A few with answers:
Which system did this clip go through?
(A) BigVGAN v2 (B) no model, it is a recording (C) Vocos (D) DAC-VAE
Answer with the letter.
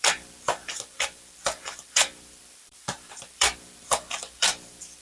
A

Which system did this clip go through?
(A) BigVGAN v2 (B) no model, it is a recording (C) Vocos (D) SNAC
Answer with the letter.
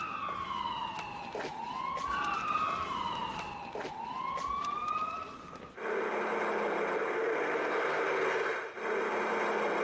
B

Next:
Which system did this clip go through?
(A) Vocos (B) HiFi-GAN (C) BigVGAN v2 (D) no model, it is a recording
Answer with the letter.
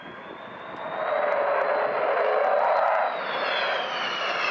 D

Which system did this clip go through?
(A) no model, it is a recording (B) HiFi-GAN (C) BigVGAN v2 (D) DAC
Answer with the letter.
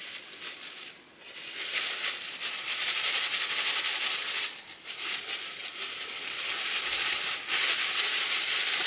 A